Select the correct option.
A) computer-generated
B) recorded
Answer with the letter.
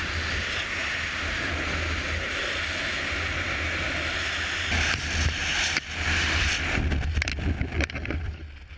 B